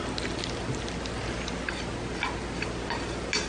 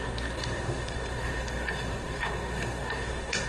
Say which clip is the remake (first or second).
second